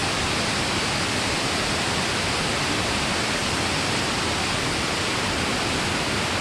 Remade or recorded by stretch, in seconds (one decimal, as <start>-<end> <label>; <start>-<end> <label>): 0.0-6.4 recorded